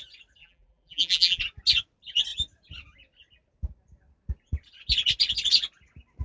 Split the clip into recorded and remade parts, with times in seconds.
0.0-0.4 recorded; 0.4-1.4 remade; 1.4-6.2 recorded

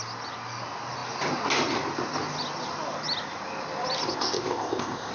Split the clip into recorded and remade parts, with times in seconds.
0.0-4.1 recorded; 4.1-5.1 remade

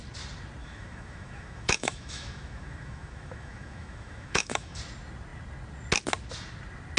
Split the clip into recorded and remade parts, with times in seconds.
0.0-0.6 recorded; 0.6-4.8 remade; 4.8-7.0 recorded

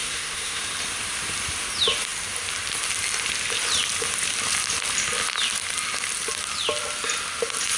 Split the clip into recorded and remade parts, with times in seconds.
0.0-0.6 remade; 0.6-7.8 recorded

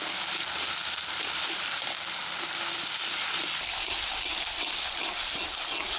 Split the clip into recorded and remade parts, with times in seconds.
0.0-6.0 recorded

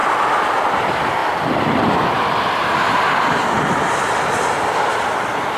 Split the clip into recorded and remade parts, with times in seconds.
0.0-5.6 remade